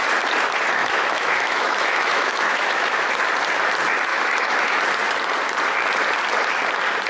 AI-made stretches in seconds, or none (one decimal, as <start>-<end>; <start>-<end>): 0.8-3.1; 4.1-4.8